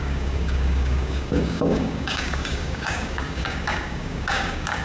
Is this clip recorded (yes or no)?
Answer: no